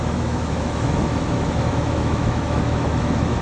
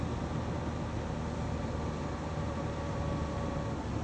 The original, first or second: second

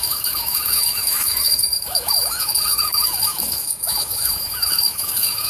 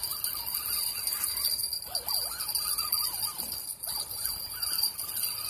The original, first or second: second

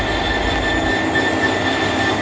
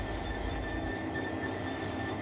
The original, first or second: first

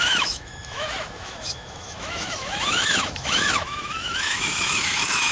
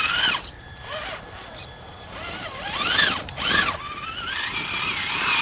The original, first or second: second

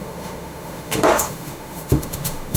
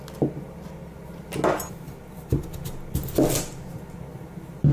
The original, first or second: second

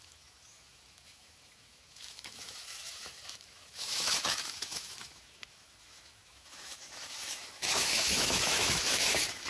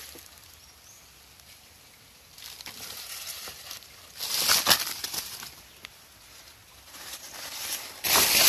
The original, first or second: second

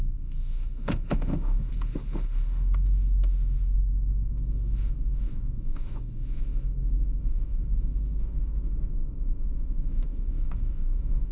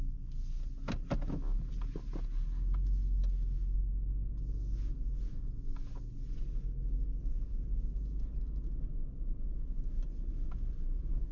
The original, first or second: second